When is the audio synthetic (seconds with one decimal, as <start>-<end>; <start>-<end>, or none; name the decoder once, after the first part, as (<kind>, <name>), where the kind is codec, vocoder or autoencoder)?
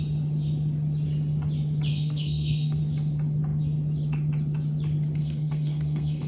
1.9-2.8 (codec, SNAC); 5.2-6.3